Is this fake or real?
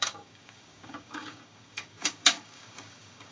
fake